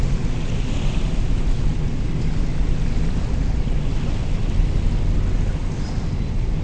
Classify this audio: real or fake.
real